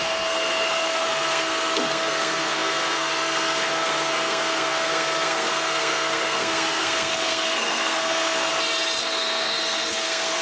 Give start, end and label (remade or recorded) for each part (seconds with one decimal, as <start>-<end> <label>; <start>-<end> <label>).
0.0-8.5 remade; 8.5-9.0 recorded; 9.0-10.4 remade